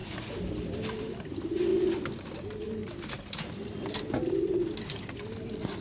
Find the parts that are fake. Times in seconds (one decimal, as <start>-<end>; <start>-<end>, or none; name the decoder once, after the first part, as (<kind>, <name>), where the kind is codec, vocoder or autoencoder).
none